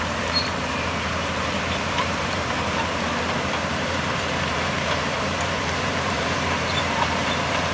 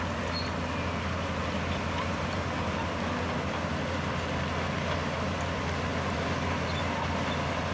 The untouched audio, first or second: second